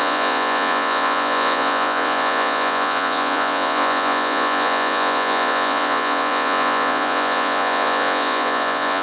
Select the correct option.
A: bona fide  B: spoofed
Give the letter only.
B